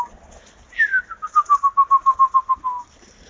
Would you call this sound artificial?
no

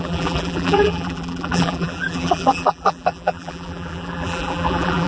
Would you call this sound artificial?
yes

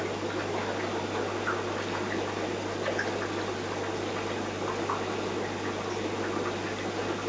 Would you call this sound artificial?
no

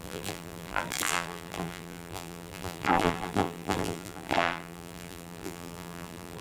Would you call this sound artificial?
yes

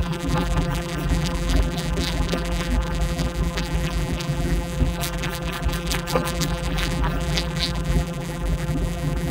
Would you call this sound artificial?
yes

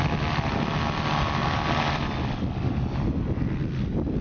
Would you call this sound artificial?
no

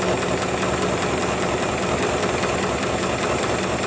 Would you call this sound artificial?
no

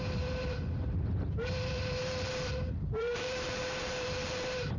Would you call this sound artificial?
yes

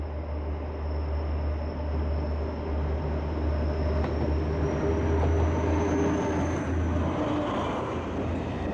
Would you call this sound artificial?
no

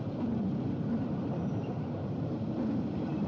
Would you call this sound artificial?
yes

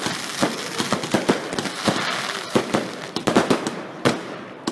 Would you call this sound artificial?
yes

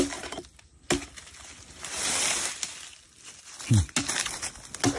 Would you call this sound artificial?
no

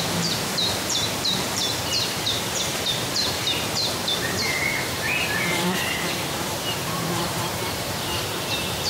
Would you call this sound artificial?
yes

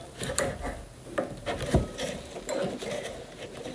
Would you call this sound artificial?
no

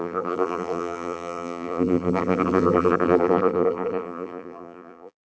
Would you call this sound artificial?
yes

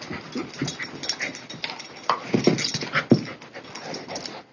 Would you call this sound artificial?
no